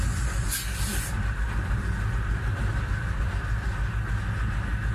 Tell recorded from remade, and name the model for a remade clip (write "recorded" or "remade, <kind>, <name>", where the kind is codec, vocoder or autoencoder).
recorded